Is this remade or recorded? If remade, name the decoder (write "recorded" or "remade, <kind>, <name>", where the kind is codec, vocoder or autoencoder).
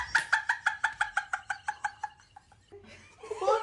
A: recorded